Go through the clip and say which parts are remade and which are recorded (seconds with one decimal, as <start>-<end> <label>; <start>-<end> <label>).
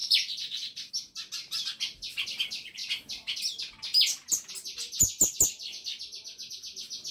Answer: 0.0-0.9 remade; 0.9-7.1 recorded